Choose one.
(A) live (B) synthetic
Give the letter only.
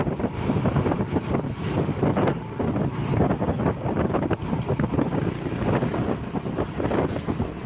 A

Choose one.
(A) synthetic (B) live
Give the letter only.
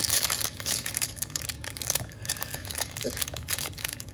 A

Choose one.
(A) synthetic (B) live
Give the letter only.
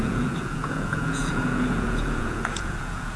A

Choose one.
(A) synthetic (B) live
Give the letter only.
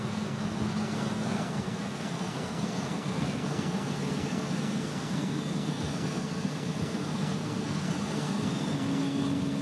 A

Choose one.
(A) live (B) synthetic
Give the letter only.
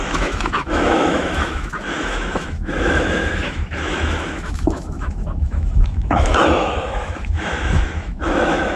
B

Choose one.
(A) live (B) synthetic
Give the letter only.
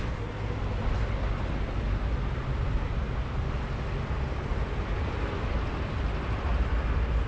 A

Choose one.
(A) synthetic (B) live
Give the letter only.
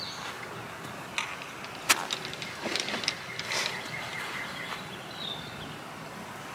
B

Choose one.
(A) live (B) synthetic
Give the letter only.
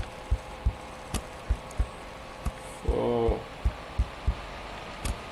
A